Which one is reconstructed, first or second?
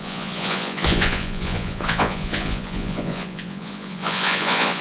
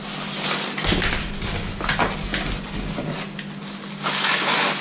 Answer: first